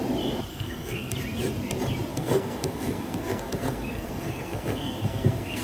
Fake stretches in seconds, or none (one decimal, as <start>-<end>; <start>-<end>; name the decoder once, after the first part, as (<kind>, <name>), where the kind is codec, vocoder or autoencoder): 0.5-1.1 (codec, SNAC); 2.1-5.6